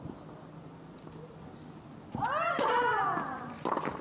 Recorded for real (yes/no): yes